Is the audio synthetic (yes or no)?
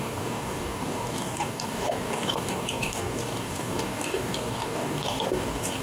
yes